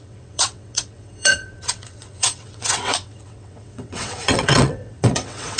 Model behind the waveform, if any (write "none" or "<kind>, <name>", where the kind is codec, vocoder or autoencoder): vocoder, WaveNeXt